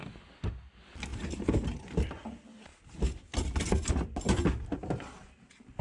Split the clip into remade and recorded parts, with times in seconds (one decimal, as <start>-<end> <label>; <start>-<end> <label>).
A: 0.0-1.1 recorded; 1.1-1.9 remade; 1.9-5.8 recorded